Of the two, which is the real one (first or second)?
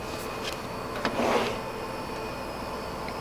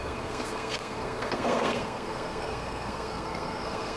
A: first